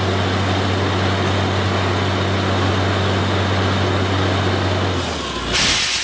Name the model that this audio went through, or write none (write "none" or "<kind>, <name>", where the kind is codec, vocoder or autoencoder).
none